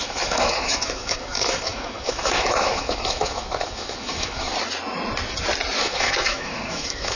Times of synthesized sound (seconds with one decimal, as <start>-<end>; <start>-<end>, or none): 0.0-4.5; 5.8-7.2